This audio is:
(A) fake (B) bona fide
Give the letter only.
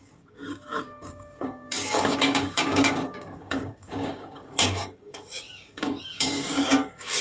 A